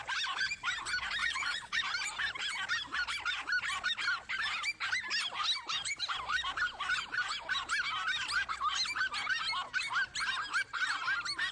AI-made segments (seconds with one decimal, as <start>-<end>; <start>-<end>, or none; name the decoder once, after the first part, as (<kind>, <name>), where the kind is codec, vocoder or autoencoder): 1.2-1.8 (vocoder, Vocos)